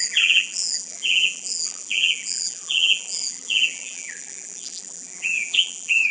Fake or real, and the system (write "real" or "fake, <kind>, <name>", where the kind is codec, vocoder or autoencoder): fake, vocoder, BigVGAN v2